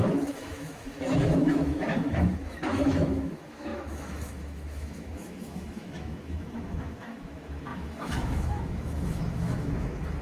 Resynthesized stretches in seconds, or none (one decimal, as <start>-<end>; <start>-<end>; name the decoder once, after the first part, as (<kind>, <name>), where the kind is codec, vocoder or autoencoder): 0.0-10.2 (autoencoder, DAC-VAE)